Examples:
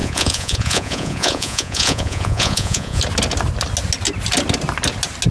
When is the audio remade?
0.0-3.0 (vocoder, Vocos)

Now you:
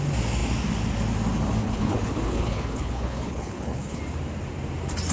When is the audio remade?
1.6-4.0 (codec, HILCodec)

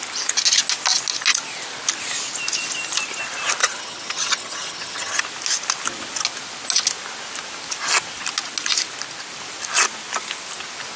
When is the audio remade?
3.6-5.2 (vocoder, HiFi-GAN)

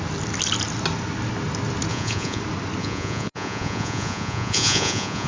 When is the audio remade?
1.9-2.4 (vocoder, Vocos); 2.8-5.3

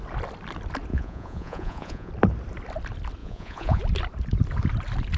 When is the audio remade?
0.9-2.1 (vocoder, Vocos); 3.2-3.8

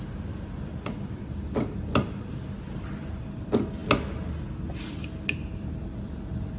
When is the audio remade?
none